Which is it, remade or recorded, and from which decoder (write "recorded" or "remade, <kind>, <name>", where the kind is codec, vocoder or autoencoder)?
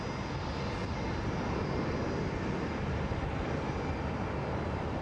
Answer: recorded